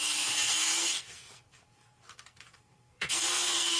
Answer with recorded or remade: remade